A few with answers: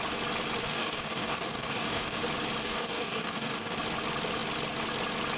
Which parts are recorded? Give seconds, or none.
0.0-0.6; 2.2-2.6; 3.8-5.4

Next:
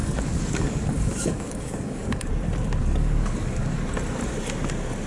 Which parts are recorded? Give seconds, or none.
2.3-2.8; 3.8-5.1